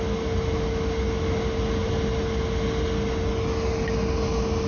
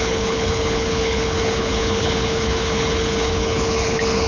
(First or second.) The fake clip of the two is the second